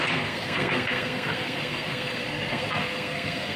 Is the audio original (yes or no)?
no